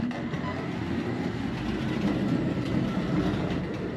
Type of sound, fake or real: real